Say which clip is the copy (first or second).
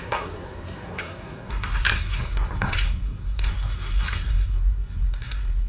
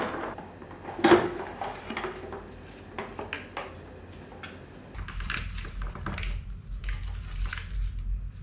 first